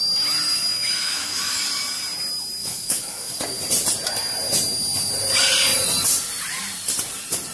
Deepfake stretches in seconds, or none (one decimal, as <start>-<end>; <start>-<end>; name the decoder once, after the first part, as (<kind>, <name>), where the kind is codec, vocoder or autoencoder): 0.7-1.6 (autoencoder, DAC-VAE); 2.6-3.3

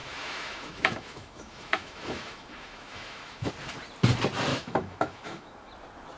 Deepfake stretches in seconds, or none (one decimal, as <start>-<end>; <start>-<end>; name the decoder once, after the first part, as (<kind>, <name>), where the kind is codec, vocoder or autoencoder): 0.0-3.5 (autoencoder, DAC-VAE); 4.5-5.7

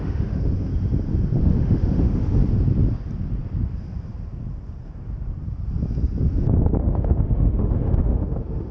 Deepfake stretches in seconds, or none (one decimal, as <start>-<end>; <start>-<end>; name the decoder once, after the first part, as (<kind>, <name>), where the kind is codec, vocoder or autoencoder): 0.0-0.7 (autoencoder, DAC-VAE); 1.4-2.4; 6.8-8.7

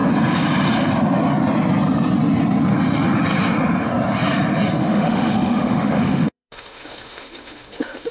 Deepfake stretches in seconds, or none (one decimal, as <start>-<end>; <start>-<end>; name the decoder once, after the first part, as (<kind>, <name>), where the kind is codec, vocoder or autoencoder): 4.8-8.1 (autoencoder, DAC-VAE)

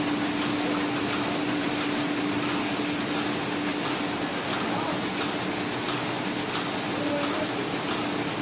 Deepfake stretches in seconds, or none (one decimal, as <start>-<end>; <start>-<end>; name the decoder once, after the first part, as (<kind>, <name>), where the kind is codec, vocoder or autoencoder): none